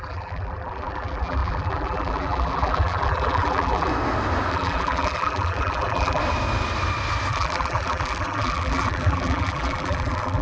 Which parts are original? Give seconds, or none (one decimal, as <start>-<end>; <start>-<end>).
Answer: 3.9-4.5; 6.2-7.3